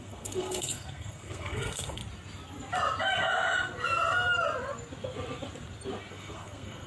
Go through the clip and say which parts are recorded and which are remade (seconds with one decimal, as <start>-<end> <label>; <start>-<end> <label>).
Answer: 0.0-2.0 remade; 2.0-6.1 recorded; 6.1-6.9 remade